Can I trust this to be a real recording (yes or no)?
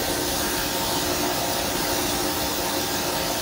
yes